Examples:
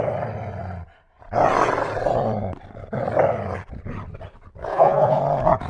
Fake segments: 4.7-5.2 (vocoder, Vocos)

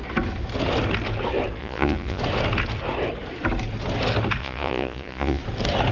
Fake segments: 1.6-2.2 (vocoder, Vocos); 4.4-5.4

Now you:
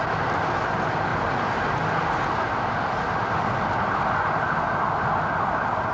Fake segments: none